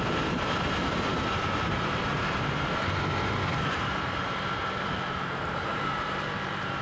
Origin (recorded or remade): remade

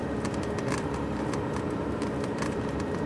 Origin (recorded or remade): remade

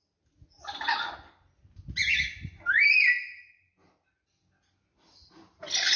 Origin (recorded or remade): recorded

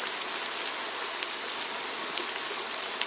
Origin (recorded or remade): recorded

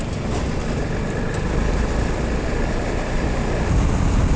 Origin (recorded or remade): recorded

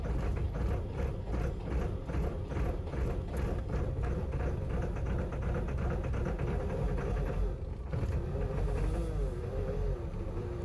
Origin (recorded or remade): recorded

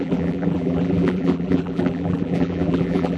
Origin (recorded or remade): remade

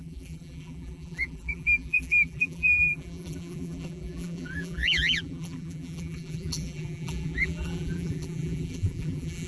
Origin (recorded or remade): remade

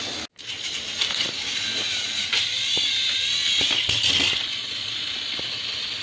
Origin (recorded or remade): recorded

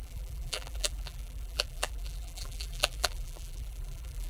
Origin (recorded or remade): remade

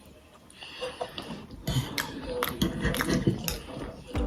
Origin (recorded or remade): recorded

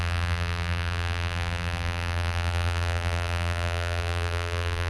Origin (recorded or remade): remade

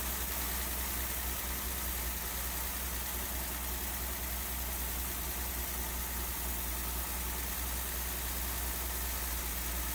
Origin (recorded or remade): recorded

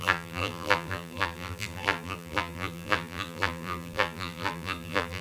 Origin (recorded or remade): remade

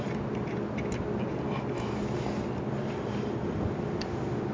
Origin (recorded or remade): recorded